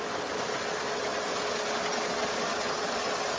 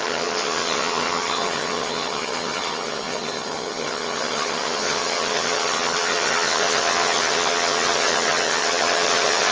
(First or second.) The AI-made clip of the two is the second